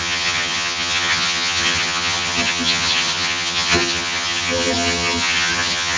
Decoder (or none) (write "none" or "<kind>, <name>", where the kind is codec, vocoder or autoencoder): vocoder, HiFi-GAN